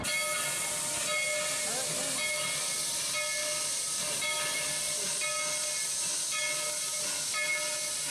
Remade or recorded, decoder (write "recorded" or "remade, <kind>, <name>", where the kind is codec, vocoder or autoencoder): recorded